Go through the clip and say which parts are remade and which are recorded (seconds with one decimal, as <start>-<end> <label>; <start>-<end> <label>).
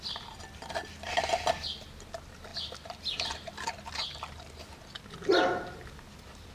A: 0.0-6.5 recorded